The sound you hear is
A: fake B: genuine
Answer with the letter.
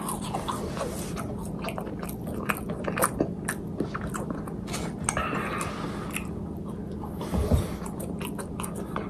B